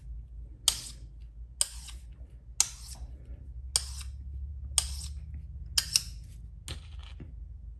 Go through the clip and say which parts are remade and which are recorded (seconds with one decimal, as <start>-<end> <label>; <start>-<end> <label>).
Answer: 0.0-7.8 recorded